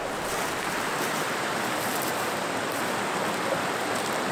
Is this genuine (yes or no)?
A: yes